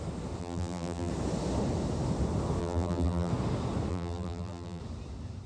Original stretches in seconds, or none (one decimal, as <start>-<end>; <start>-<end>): 0.0-0.4; 1.1-2.6; 3.3-3.9; 4.8-5.5